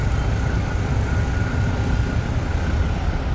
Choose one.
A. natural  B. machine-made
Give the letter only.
A